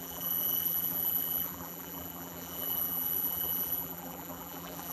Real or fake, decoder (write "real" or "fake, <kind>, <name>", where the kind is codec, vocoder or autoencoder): fake, vocoder, BigVGAN v2